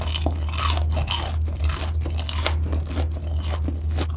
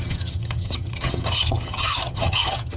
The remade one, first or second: second